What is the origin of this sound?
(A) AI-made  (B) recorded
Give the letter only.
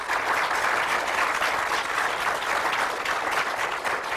B